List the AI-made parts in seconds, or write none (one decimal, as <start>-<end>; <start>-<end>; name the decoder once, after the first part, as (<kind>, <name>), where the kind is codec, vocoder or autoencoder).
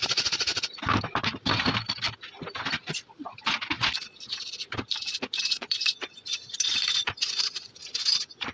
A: 0.0-0.5 (vocoder, Vocos); 5.4-8.5